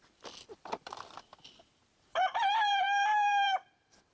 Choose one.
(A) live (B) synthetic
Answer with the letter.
B